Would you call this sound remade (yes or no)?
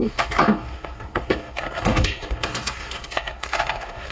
yes